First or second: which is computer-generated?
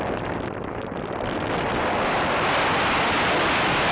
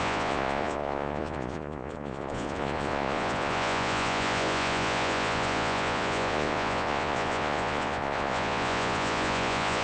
second